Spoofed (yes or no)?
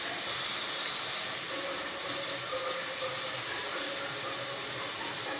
no